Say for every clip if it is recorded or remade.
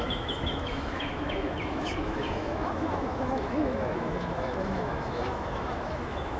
remade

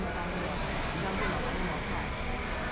recorded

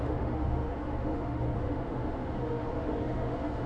remade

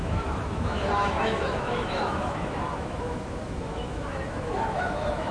remade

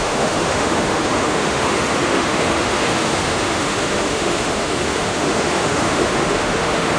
remade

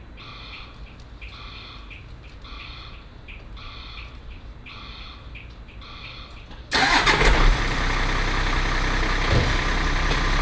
recorded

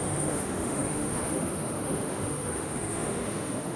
remade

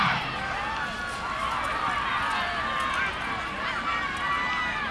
recorded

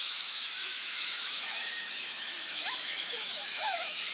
remade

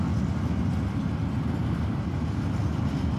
recorded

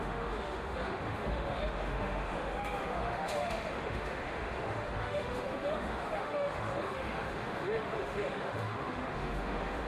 remade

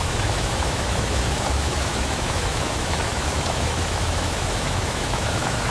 remade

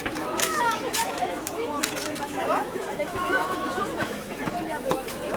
remade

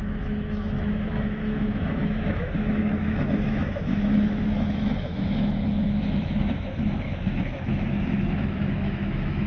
remade